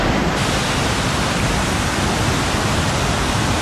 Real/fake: real